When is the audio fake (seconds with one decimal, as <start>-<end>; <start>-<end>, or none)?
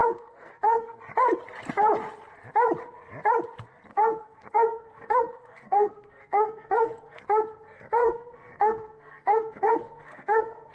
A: 0.0-1.0; 3.9-7.2; 8.0-10.7